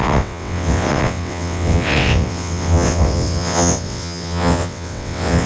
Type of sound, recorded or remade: remade